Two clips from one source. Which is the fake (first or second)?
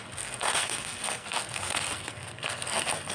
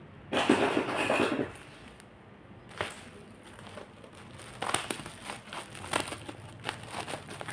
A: first